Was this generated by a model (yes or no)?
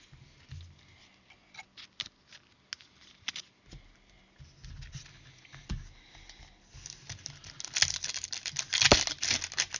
no